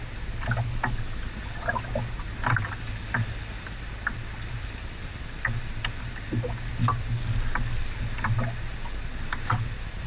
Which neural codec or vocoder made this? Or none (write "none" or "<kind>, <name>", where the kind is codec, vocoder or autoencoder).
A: none